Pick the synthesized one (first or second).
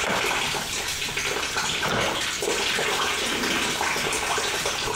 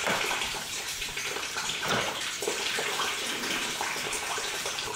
second